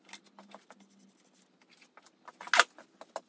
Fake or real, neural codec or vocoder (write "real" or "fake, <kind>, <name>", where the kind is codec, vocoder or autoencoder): real